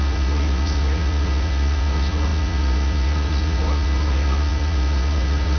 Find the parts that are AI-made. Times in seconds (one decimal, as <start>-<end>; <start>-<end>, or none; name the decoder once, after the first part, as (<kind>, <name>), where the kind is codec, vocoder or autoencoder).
0.0-5.6 (vocoder, Vocos)